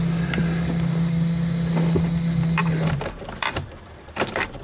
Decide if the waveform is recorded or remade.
remade